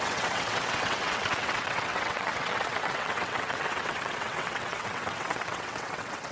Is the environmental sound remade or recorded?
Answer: remade